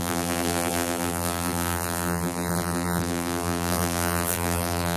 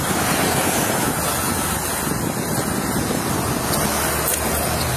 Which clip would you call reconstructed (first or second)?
first